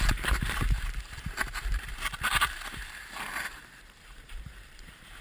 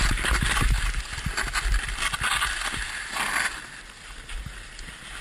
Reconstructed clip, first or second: first